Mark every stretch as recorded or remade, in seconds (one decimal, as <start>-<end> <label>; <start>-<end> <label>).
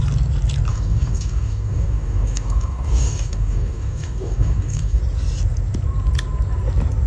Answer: 0.0-0.7 recorded; 0.7-5.0 remade; 5.0-7.1 recorded